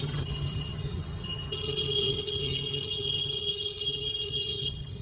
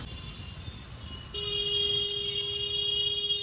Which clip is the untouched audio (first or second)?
second